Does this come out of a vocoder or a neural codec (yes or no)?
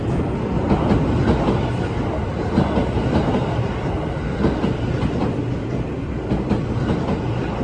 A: no